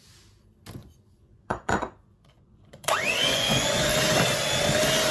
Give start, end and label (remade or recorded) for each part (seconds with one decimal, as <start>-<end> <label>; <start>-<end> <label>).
0.0-0.8 recorded; 0.8-3.9 remade; 3.9-5.1 recorded